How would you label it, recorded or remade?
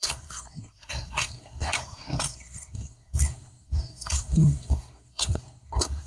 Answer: remade